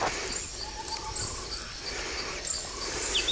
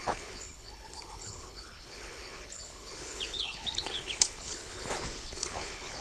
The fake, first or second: second